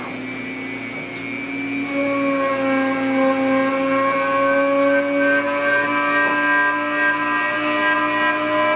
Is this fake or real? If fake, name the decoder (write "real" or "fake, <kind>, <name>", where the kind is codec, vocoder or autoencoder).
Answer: real